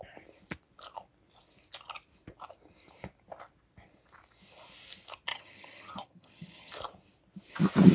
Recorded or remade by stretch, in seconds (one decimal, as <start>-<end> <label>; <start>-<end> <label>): 0.0-5.3 recorded; 5.3-6.7 remade; 6.7-7.9 recorded